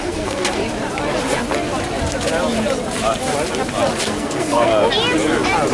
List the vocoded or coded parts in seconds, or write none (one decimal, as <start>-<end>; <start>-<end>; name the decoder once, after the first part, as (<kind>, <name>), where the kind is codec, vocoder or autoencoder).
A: 0.0-0.6 (codec, SNAC); 4.0-4.7